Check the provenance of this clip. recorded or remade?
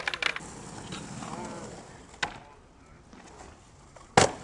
recorded